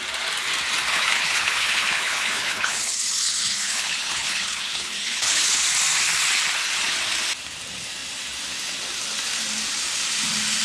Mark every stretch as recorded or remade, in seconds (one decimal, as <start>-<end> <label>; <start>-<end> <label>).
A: 0.0-0.9 recorded; 0.9-5.6 remade; 5.6-10.6 recorded